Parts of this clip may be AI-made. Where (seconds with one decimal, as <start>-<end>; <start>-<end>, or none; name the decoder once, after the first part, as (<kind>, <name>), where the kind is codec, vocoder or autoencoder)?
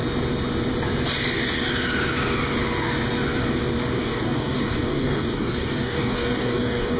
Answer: 4.0-7.0 (codec, DAC)